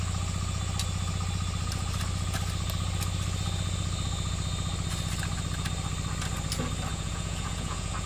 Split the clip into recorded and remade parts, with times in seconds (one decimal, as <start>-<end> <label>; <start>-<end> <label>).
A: 0.0-6.9 recorded; 6.9-8.1 remade

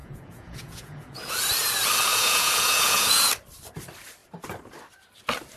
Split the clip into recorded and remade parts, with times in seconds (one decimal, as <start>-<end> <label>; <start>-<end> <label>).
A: 0.0-1.5 remade; 1.5-2.1 recorded; 2.1-3.3 remade; 3.3-5.6 recorded

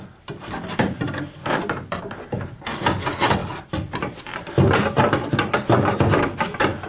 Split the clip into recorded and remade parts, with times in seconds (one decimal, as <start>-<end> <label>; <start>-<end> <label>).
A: 0.0-1.4 recorded; 1.4-2.0 remade; 2.0-6.9 recorded